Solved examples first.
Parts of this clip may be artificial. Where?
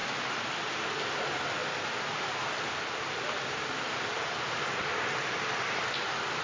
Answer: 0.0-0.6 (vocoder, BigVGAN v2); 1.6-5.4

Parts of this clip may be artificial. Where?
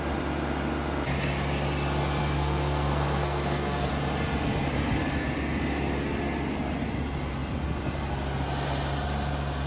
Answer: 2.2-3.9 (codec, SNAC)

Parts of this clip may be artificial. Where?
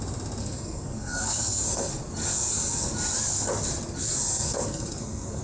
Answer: 0.4-1.9 (codec, SNAC); 2.3-2.9; 4.0-5.4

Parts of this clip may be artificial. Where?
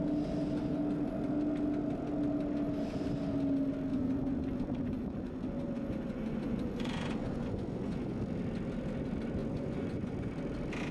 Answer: 3.9-8.2 (vocoder, Vocos); 9.4-10.3